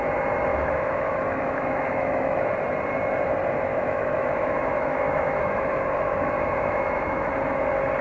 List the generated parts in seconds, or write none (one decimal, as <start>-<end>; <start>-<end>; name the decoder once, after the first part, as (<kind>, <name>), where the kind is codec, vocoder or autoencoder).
0.5-2.5 (autoencoder, DAC-VAE); 3.7-7.3